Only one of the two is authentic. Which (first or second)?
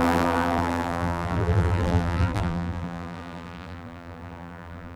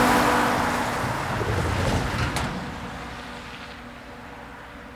second